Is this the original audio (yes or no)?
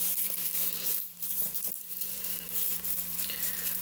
no